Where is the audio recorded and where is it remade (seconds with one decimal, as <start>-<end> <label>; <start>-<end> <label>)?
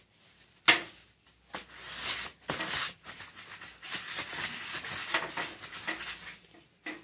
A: 0.0-7.0 recorded